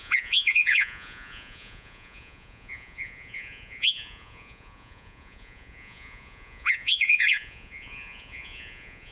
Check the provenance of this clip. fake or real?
fake